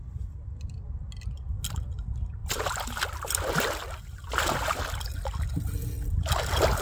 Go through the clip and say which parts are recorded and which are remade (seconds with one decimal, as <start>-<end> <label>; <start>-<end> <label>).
0.0-6.8 recorded